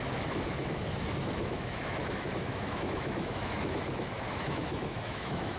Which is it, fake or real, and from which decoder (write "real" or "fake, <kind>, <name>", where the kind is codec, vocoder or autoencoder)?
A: fake, autoencoder, DAC-VAE